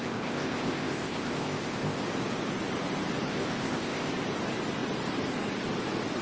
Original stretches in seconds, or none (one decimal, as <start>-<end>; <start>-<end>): 2.0-3.3; 4.1-6.2